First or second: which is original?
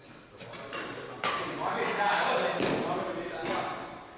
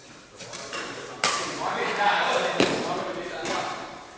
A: first